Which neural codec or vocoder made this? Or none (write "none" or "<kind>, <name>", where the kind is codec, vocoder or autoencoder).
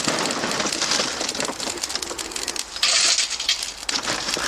none